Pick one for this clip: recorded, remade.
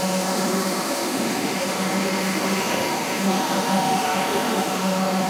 remade